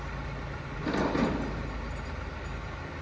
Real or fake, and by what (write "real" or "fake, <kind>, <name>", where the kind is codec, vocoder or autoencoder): real